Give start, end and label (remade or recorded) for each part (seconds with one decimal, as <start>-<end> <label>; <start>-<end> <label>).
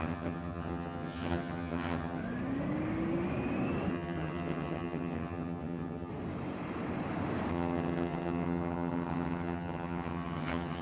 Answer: 0.0-2.2 remade; 2.2-3.9 recorded; 3.9-6.1 remade; 6.1-7.5 recorded; 7.5-10.8 remade